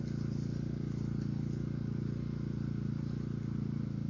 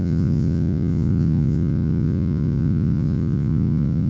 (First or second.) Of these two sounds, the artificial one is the second